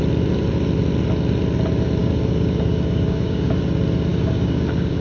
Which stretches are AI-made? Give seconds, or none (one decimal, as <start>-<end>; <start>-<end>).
2.0-3.5; 4.1-5.0